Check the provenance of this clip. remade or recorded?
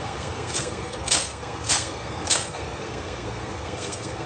remade